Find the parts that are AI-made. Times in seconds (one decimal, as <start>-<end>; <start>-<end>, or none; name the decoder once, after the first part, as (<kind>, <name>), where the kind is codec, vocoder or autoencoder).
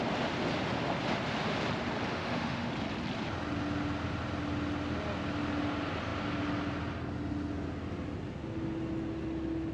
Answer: 2.1-2.7 (autoencoder, DAC-VAE)